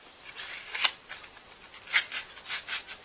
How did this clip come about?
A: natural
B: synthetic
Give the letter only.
A